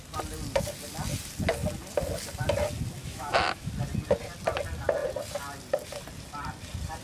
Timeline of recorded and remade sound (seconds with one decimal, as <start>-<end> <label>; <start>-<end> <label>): 0.0-3.0 recorded; 3.0-3.7 remade; 3.7-7.0 recorded